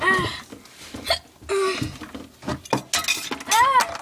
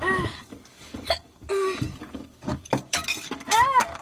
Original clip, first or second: first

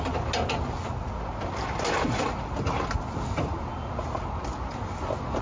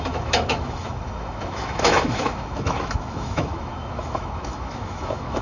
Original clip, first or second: first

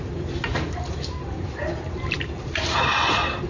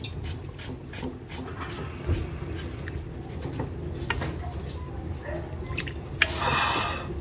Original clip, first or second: second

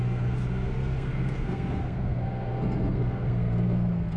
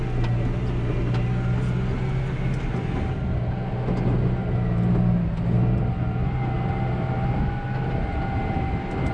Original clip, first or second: second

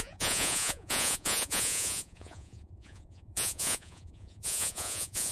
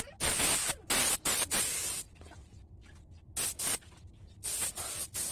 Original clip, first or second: second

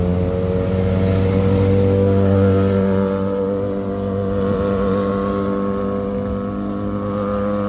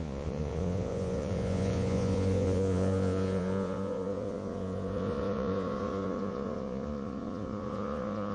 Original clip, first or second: first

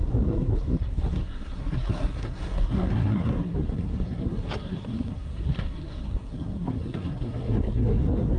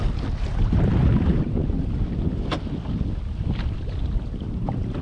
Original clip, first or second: second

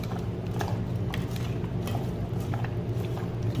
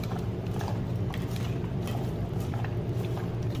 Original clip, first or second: first